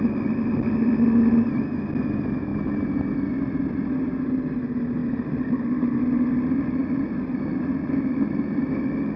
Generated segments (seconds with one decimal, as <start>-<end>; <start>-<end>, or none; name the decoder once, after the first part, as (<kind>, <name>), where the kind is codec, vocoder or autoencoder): none